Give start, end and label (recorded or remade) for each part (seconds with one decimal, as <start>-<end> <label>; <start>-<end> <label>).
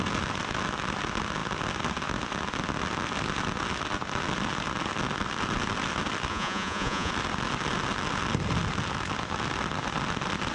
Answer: 0.0-6.3 recorded; 6.3-7.1 remade; 7.1-10.5 recorded